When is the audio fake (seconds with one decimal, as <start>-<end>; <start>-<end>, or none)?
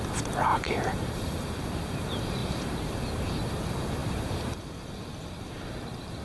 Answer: 0.5-2.0; 2.4-2.9; 4.0-6.2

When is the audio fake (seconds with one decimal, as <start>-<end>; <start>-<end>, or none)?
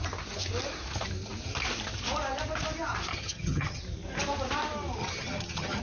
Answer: 3.1-3.8; 5.0-5.8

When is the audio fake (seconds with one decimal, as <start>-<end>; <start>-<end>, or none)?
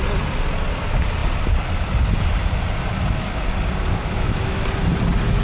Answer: 4.0-4.6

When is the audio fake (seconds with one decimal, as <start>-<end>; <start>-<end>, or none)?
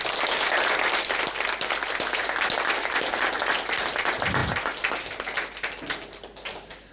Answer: none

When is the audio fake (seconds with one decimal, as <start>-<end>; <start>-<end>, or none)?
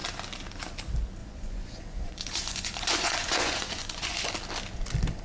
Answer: 1.2-4.3